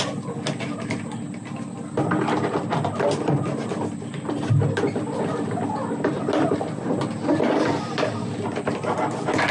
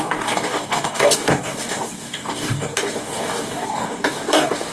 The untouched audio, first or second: first